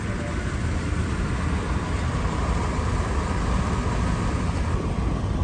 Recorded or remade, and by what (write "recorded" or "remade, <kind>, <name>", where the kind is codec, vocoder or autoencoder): recorded